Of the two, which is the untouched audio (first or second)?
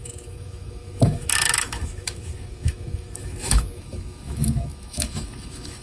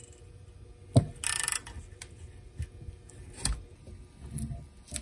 second